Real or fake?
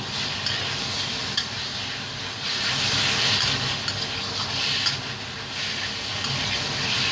real